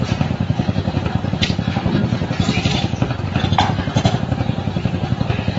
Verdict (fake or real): real